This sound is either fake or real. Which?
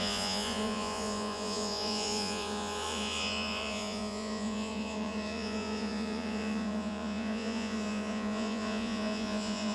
fake